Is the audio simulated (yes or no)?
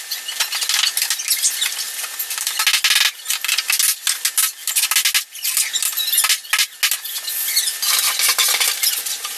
no